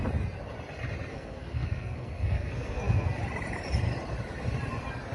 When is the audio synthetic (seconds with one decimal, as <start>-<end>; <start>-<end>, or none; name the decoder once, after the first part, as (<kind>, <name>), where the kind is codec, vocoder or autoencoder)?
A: 1.1-3.2 (codec, SNAC)